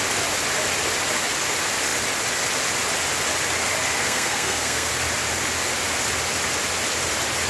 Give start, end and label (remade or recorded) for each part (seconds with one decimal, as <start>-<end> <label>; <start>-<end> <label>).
0.0-4.0 recorded; 4.0-4.9 remade; 4.9-7.5 recorded